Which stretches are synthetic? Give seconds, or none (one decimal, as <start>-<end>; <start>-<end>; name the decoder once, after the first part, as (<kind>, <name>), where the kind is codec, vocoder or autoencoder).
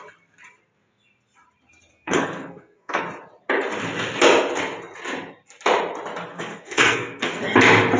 1.9-3.0 (codec, SNAC); 6.3-7.4